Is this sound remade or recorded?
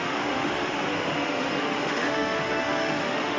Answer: remade